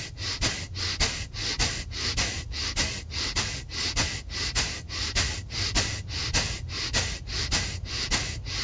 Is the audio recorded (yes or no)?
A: yes